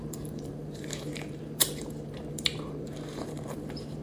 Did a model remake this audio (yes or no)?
yes